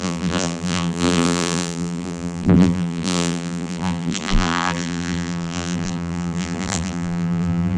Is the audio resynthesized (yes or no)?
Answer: yes